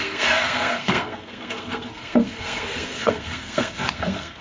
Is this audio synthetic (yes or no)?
yes